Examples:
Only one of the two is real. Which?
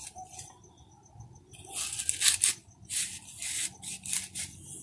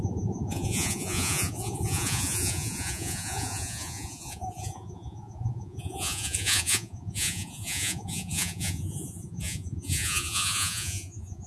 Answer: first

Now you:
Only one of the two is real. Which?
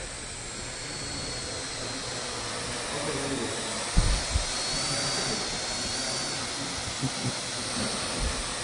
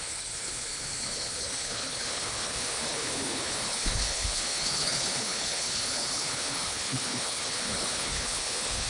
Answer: first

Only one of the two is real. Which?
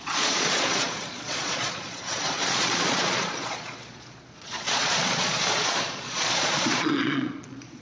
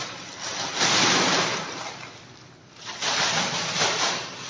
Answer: second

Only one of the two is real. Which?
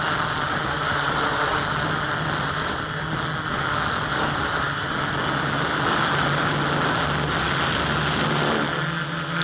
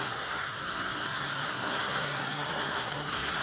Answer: first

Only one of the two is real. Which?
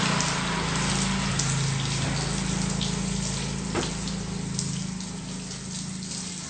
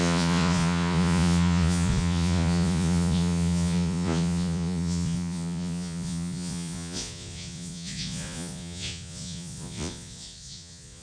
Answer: first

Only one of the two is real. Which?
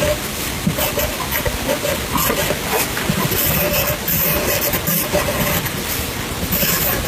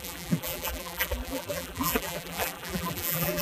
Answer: first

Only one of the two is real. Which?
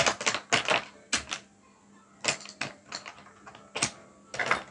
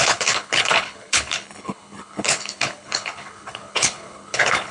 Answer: first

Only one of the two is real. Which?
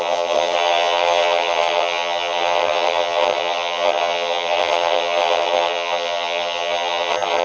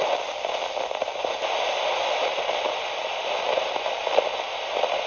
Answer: second